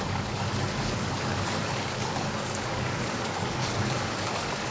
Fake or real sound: fake